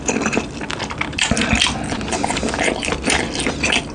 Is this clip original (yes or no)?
yes